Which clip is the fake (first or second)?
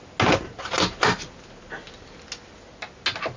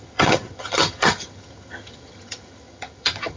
second